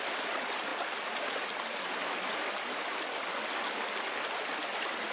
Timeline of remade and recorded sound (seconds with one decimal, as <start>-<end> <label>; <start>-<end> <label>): 0.0-5.1 recorded